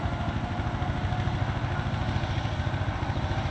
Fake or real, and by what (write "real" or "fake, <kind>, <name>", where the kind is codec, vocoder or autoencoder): real